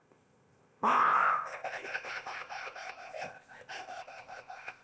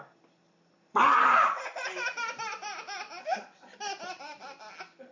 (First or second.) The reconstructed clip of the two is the first